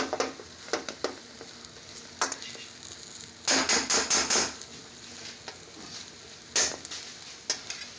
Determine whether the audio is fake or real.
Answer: real